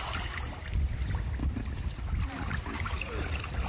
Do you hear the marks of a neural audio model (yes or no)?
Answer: no